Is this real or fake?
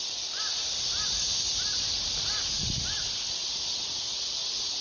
real